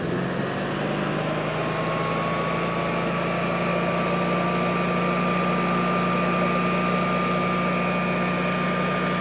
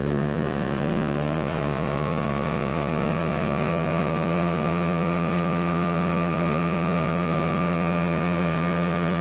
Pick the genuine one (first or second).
first